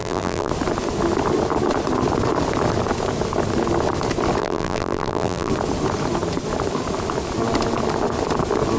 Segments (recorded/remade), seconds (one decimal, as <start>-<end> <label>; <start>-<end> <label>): 0.0-0.5 remade; 0.5-4.4 recorded; 4.4-5.5 remade; 5.5-8.8 recorded